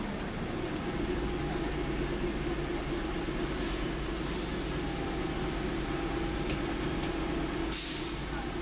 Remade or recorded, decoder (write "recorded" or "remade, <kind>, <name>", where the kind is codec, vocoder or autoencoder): recorded